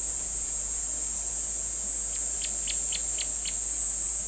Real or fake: real